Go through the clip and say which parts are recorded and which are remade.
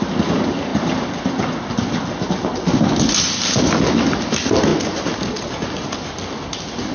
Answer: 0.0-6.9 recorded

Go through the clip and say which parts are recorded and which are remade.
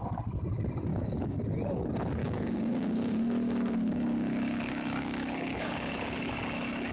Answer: 0.0-0.9 recorded; 0.9-1.4 remade; 1.4-2.2 recorded; 2.2-6.3 remade; 6.3-6.9 recorded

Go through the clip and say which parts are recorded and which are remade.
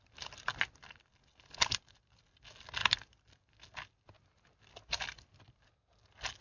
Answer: 0.0-6.4 recorded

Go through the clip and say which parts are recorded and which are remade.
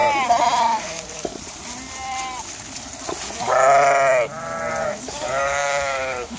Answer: 0.0-0.6 recorded; 0.6-1.3 remade; 1.3-4.8 recorded; 4.8-6.4 remade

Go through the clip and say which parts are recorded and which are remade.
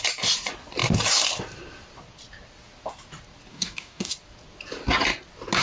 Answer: 0.0-3.5 recorded; 3.5-4.1 remade; 4.1-5.6 recorded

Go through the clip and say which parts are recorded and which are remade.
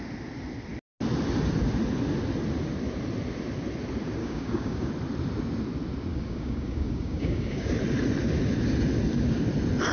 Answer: 0.0-4.2 recorded; 4.2-4.9 remade; 4.9-6.1 recorded; 6.1-7.7 remade; 7.7-9.9 recorded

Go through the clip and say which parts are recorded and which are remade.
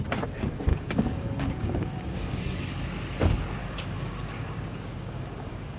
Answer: 0.0-0.7 recorded; 0.7-2.4 remade; 2.4-3.6 recorded; 3.6-5.8 remade